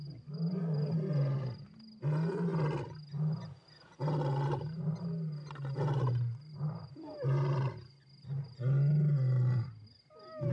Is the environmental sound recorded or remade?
recorded